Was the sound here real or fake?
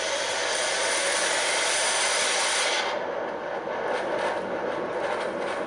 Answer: real